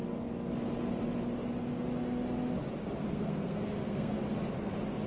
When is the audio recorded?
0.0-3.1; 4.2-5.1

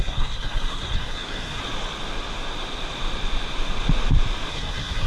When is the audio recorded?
1.6-4.5

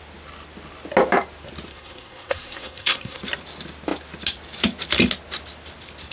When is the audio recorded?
0.0-1.7; 3.2-6.1

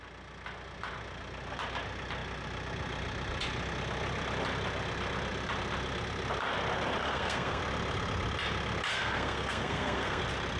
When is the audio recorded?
0.0-7.0; 7.6-8.9; 10.2-10.6